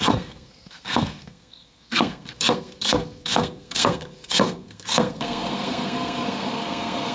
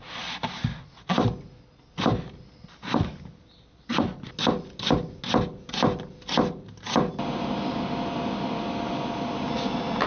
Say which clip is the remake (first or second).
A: first